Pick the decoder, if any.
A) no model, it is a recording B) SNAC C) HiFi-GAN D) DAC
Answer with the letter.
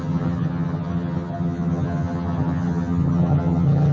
C